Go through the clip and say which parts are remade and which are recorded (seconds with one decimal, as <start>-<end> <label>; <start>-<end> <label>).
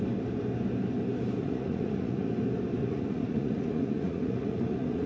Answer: 0.0-1.4 recorded; 1.4-2.3 remade; 2.3-2.8 recorded; 2.8-5.1 remade